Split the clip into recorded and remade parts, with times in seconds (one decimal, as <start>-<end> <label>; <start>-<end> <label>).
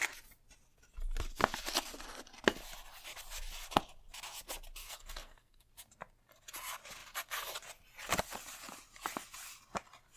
0.0-4.8 recorded; 4.8-5.7 remade; 5.7-10.2 recorded